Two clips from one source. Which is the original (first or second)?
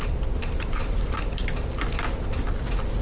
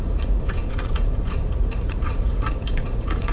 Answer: first